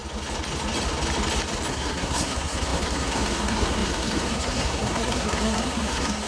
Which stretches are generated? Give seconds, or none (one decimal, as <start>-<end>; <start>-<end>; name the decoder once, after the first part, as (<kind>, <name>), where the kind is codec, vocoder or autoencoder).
1.7-6.3 (codec, SNAC)